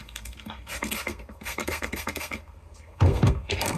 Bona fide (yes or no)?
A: no